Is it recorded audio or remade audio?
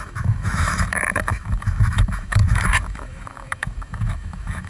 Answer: remade